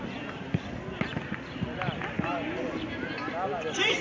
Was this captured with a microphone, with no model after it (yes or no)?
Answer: yes